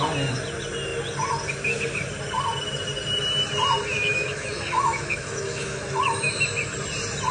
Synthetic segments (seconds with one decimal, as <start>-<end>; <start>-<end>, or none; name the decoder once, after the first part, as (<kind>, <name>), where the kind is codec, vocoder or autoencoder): 3.9-6.3 (autoencoder, DAC-VAE)